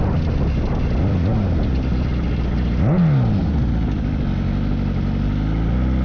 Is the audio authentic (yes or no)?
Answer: yes